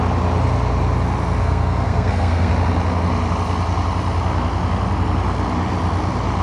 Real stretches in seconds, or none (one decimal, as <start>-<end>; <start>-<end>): 0.0-1.4; 2.5-6.4